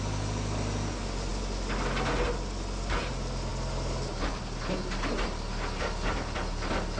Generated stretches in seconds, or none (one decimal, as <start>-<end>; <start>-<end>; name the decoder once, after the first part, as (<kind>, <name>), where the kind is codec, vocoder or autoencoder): none